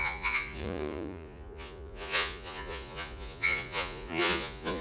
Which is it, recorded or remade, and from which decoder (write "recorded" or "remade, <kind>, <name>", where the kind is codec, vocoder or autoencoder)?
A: remade, vocoder, Vocos